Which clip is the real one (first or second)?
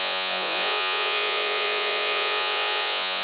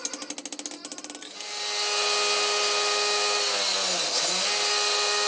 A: second